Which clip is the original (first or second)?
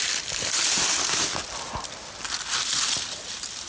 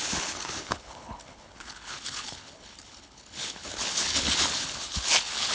first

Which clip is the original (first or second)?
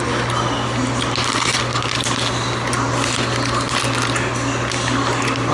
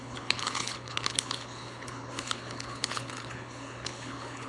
first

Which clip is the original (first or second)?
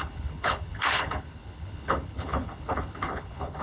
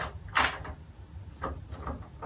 second